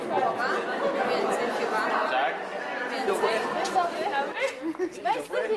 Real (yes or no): yes